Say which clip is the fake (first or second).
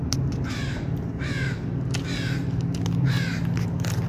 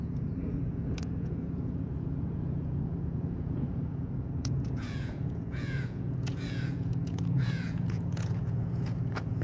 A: second